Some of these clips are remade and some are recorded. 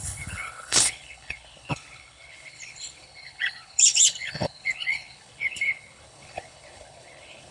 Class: remade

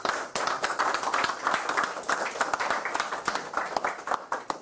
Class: remade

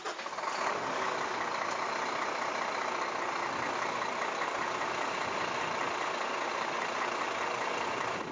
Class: recorded